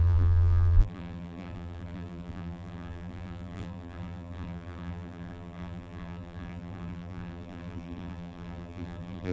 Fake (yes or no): yes